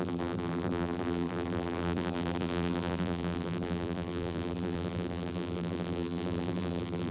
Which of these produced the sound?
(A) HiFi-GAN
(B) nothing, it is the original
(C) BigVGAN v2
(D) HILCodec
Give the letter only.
C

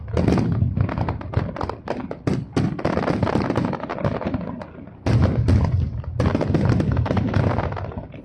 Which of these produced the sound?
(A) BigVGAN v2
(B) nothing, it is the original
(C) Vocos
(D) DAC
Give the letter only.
B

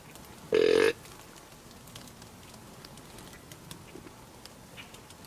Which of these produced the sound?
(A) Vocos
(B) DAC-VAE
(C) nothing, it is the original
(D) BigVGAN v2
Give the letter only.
C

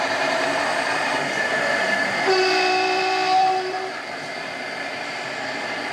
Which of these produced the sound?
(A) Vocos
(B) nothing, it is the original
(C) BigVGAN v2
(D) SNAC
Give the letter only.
C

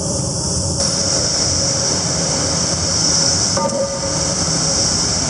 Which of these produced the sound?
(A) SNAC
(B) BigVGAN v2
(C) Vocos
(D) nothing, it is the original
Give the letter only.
B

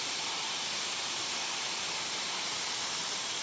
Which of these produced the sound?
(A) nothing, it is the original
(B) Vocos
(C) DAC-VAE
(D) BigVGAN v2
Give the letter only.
D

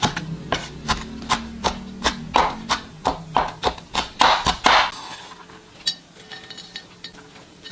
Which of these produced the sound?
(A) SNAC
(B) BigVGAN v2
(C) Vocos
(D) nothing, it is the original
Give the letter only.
D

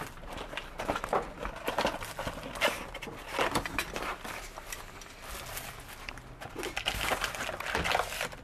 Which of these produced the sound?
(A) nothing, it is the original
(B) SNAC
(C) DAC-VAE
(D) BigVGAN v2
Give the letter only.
A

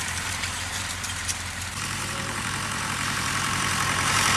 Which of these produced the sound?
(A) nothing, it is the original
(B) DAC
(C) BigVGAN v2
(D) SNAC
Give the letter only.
C